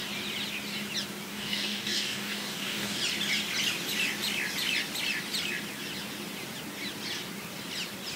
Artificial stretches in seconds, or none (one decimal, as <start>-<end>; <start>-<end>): 1.3-3.0